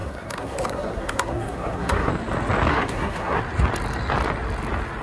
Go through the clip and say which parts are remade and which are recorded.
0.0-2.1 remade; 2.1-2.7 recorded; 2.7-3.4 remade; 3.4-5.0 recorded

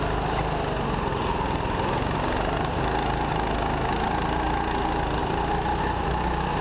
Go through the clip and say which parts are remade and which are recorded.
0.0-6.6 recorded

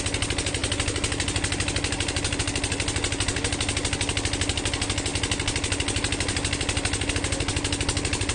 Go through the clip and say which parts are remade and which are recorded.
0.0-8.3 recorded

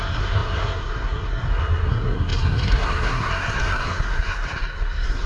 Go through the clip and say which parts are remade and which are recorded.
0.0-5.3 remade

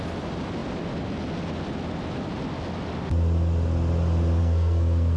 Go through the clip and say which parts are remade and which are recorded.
0.0-4.4 recorded; 4.4-5.2 remade